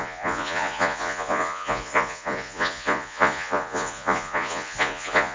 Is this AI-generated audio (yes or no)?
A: yes